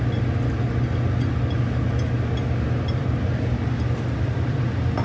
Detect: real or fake real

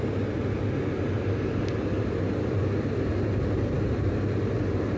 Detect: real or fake real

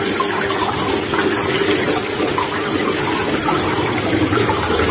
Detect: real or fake fake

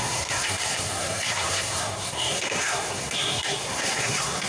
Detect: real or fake fake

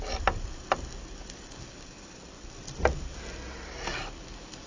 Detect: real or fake real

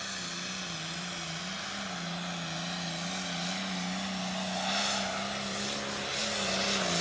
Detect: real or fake real